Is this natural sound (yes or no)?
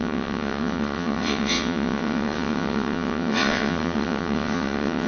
no